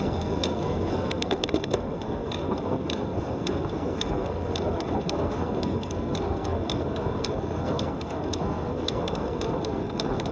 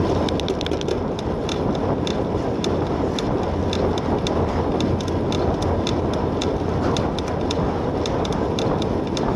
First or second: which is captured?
second